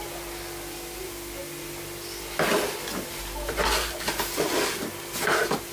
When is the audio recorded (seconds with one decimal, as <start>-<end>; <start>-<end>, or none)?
0.0-5.7